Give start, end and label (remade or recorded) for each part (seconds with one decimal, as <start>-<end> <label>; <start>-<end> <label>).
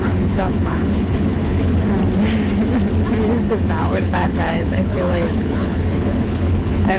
0.0-1.8 remade; 1.8-3.8 recorded; 3.8-7.0 remade